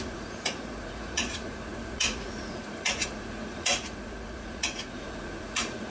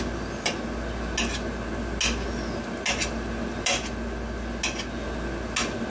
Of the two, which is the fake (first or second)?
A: first